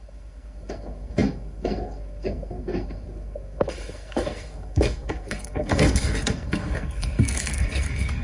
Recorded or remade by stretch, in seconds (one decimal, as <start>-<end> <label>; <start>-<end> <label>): 0.0-8.2 remade